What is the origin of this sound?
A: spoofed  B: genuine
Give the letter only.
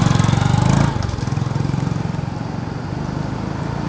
B